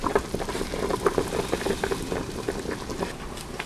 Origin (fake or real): real